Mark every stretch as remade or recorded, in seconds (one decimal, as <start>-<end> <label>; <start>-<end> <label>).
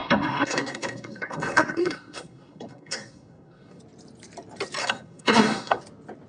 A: 0.0-3.8 remade; 3.8-4.8 recorded; 4.8-5.8 remade; 5.8-6.3 recorded